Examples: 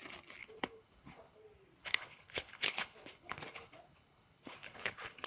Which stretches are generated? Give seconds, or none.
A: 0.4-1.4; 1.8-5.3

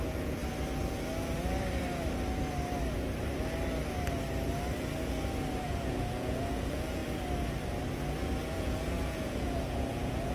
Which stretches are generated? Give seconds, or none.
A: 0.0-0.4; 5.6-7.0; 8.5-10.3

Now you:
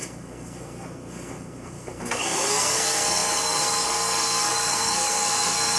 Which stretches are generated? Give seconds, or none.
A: 0.0-5.8